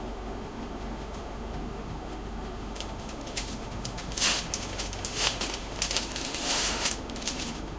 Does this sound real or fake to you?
fake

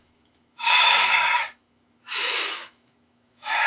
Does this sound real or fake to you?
fake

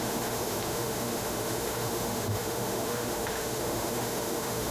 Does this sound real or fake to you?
fake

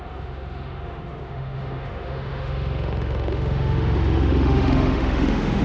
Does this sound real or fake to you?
fake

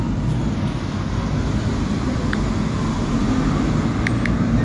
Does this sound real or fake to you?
real